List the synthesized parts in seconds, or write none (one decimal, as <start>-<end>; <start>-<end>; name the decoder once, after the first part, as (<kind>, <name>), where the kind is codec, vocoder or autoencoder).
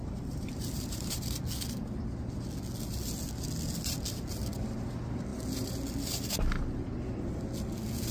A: 0.0-1.3 (vocoder, BigVGAN v2)